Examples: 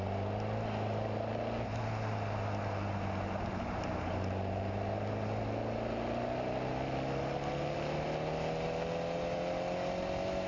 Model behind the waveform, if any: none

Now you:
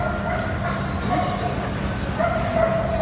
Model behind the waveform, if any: none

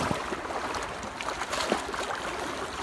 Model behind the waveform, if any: none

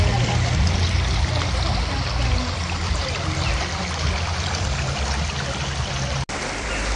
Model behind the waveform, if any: none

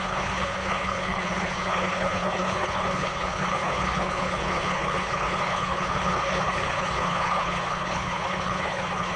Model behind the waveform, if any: codec, HILCodec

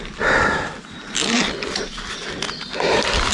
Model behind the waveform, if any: none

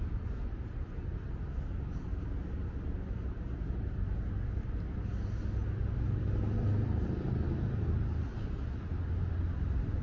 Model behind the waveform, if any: none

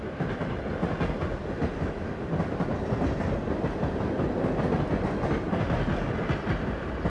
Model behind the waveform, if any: none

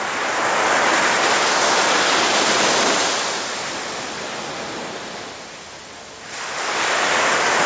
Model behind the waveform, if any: none